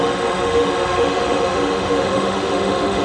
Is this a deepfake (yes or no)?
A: yes